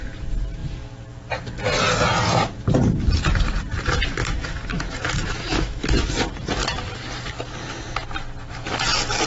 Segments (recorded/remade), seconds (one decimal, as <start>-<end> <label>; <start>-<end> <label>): 0.0-4.2 recorded; 4.2-5.9 remade; 5.9-9.3 recorded